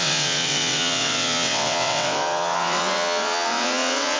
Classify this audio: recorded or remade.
remade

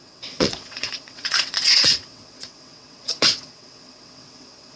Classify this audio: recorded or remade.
remade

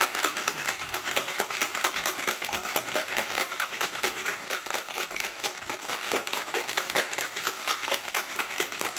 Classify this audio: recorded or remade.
remade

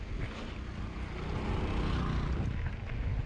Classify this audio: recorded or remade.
recorded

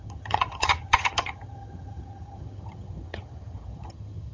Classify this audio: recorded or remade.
remade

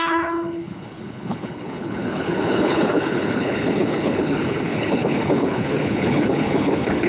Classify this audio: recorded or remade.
remade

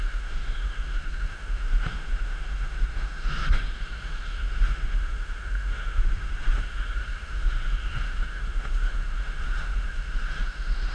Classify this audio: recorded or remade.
remade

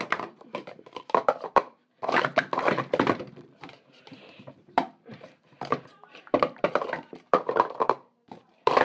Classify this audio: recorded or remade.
remade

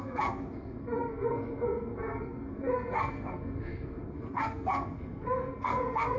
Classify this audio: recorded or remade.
remade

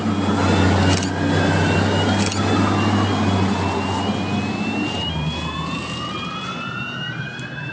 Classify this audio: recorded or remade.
recorded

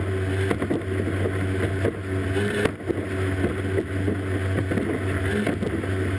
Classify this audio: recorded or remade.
recorded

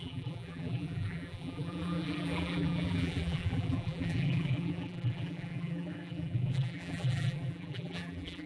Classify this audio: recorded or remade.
remade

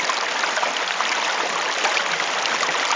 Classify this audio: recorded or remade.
recorded